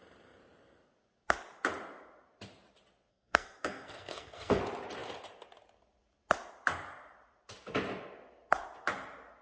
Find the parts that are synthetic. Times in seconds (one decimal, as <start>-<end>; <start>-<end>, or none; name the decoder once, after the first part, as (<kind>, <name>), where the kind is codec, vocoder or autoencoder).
3.1-4.6 (codec, SNAC)